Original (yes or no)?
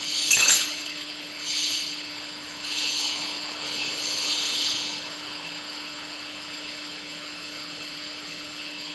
no